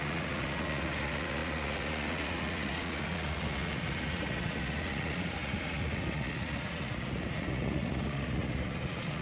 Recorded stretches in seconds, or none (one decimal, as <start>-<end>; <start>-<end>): none